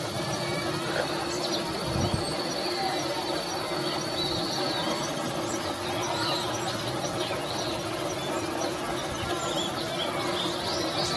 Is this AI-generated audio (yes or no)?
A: no